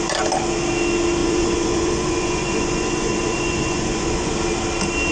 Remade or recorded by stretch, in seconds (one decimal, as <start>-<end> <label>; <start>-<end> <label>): 0.0-1.2 recorded; 1.2-4.3 remade; 4.3-5.1 recorded